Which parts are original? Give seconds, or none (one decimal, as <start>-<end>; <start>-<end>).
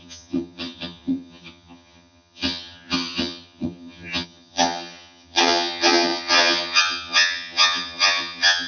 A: none